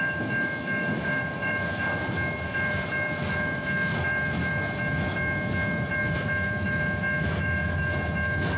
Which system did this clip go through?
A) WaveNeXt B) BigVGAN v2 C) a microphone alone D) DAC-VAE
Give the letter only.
D